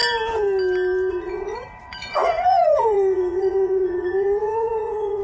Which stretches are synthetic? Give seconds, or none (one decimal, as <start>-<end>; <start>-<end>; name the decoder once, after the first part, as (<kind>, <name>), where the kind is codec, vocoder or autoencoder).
1.1-5.2 (vocoder, Vocos)